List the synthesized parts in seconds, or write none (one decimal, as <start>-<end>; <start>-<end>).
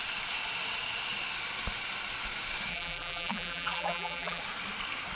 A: 2.7-4.4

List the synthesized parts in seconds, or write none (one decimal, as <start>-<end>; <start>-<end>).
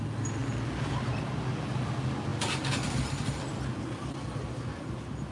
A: none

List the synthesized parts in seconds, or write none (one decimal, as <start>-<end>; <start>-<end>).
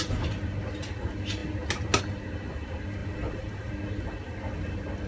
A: 3.0-3.7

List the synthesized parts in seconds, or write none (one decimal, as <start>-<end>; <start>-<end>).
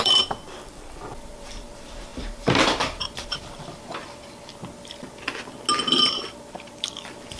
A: 0.0-4.6; 6.3-7.4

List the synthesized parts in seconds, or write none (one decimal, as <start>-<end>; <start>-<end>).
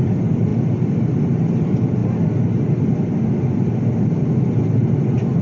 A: 0.0-0.5; 1.2-2.0